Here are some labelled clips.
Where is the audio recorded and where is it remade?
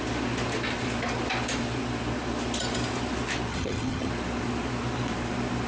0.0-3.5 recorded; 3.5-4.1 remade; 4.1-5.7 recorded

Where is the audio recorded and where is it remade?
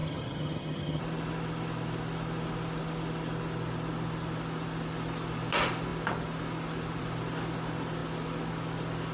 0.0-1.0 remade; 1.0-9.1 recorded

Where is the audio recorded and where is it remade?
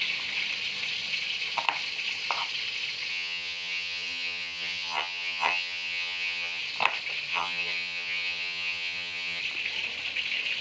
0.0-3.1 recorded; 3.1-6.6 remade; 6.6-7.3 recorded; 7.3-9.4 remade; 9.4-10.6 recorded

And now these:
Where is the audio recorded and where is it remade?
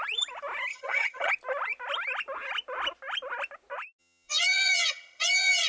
0.0-0.7 recorded; 0.7-1.3 remade; 1.3-4.0 recorded; 4.0-5.7 remade